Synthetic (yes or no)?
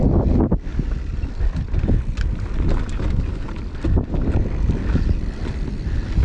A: no